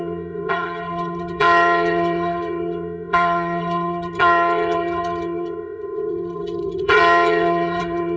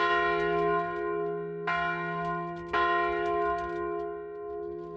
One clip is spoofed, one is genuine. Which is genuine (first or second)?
second